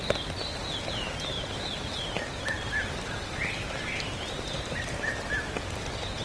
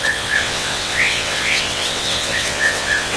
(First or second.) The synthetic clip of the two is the second